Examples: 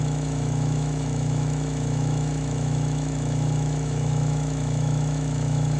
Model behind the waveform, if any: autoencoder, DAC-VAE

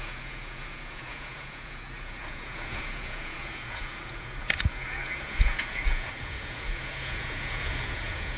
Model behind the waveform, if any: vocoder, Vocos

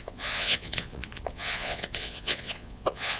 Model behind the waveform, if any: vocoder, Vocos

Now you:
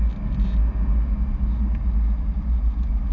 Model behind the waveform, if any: none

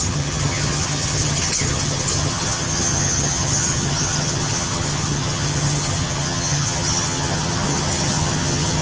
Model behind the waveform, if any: vocoder, HiFi-GAN